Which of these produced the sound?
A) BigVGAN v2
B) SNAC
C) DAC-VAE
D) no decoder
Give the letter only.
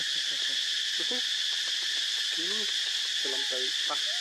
D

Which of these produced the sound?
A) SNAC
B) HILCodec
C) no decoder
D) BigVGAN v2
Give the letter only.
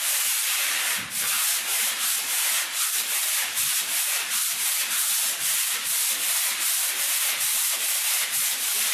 D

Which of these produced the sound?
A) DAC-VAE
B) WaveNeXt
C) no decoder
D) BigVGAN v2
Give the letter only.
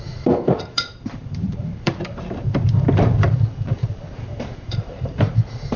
D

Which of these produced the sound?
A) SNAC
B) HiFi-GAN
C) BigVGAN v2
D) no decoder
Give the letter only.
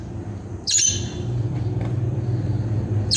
C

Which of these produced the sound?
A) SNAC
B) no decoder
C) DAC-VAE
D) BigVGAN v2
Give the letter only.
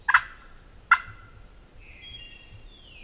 B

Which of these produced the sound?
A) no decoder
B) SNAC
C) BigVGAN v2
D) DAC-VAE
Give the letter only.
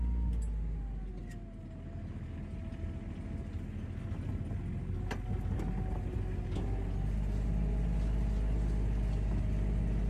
A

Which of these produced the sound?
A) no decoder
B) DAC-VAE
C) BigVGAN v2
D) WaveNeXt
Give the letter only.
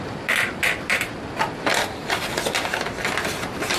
A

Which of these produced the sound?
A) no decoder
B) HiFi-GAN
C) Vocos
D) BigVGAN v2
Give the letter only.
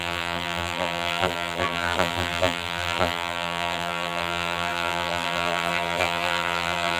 D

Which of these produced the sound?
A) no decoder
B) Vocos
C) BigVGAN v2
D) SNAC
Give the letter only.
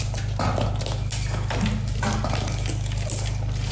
A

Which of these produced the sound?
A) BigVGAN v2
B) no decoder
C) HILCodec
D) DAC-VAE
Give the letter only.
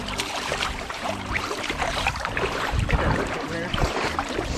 A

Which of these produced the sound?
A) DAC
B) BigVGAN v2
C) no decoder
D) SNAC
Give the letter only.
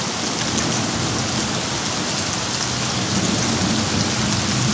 C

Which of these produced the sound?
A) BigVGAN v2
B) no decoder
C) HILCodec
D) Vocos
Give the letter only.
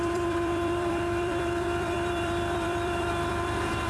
A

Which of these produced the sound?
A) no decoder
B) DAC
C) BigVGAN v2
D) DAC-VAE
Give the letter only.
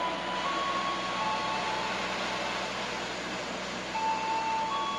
A